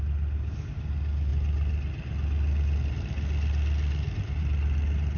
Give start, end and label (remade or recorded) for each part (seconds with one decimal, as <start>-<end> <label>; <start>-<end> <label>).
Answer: 0.0-5.2 recorded

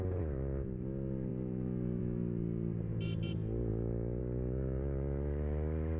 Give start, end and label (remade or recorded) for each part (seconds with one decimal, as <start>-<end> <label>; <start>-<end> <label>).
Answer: 0.0-6.0 recorded

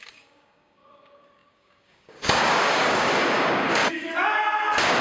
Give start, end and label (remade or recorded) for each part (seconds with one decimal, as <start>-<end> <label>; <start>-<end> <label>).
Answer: 0.0-3.8 remade; 3.8-5.0 recorded